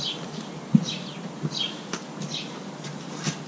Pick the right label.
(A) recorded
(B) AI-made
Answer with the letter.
A